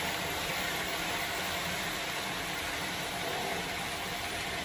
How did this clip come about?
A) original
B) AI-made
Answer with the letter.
A